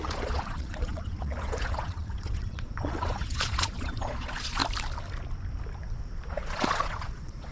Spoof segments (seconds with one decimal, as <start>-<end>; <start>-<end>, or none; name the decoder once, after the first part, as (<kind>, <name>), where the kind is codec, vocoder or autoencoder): 0.0-4.6 (vocoder, Vocos); 6.3-7.5

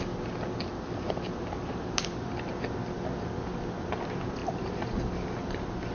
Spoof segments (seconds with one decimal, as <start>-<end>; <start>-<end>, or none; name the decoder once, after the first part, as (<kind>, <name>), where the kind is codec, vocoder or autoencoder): 0.7-2.2 (vocoder, BigVGAN v2); 4.4-5.1